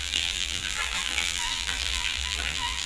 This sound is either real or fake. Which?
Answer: fake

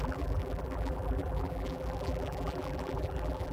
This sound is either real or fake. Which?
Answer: fake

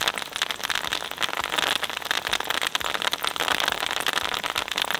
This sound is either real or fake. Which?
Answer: real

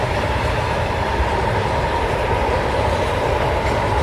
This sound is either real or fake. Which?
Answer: fake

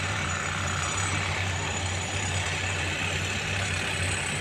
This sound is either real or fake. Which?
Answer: fake